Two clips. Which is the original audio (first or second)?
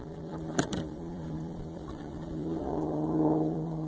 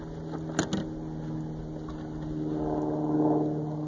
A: second